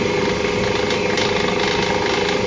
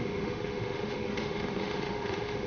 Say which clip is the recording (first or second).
first